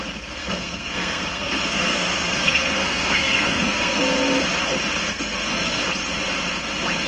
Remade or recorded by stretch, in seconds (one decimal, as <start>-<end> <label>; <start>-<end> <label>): 0.0-0.4 recorded; 0.4-4.0 remade; 4.0-5.0 recorded; 5.0-5.8 remade; 5.8-7.1 recorded